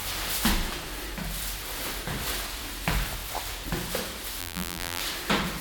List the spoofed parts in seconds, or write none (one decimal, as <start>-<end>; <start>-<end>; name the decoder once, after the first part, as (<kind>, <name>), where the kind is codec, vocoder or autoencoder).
4.4-5.0 (vocoder, BigVGAN v2)